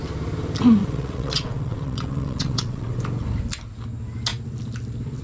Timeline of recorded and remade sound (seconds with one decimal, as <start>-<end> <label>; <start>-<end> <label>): 0.0-0.8 recorded; 0.8-3.0 remade; 3.0-5.2 recorded